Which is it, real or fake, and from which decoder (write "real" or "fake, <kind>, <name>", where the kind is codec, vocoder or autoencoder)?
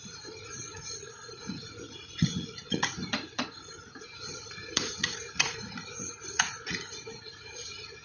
fake, vocoder, Vocos